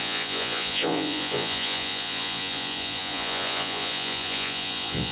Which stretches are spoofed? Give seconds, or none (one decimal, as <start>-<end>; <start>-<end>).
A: 0.0-5.1